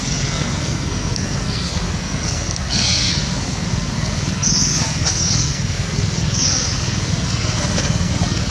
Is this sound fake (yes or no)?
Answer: yes